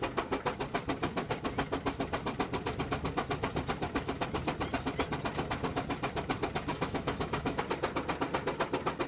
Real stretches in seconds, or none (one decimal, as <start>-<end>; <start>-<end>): 0.0-6.7; 7.6-9.1